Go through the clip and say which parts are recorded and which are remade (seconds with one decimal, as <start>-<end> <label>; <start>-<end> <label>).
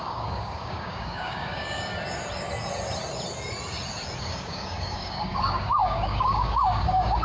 0.0-1.9 remade; 1.9-4.2 recorded; 4.2-7.2 remade